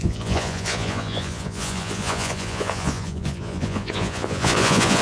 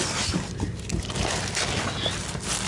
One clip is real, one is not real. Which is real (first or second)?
second